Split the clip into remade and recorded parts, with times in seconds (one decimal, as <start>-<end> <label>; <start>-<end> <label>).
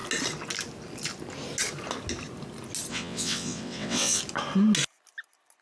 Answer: 0.0-2.9 recorded; 2.9-4.2 remade; 4.2-5.6 recorded